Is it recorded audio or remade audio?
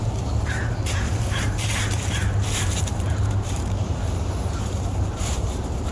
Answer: remade